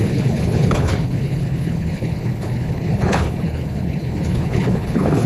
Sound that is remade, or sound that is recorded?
remade